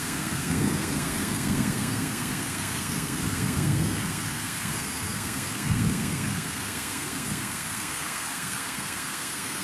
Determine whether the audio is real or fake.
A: fake